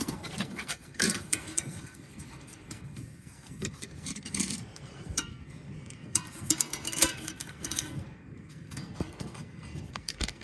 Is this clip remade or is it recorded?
remade